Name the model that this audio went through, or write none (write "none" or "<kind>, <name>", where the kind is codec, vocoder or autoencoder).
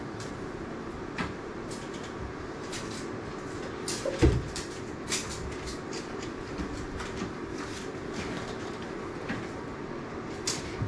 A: vocoder, BigVGAN v2